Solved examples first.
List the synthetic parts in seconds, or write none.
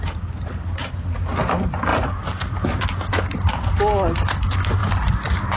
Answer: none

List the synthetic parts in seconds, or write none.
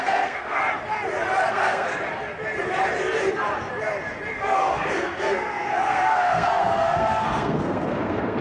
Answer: 0.0-0.6; 1.5-1.9; 4.3-8.4